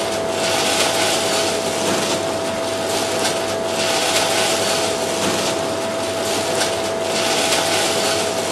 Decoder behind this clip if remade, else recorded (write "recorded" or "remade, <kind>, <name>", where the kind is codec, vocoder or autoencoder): recorded